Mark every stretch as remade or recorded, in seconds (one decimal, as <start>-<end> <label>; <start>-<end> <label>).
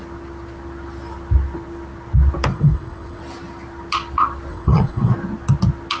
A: 0.0-2.5 recorded; 2.5-3.2 remade; 3.2-4.5 recorded; 4.5-5.1 remade; 5.1-6.0 recorded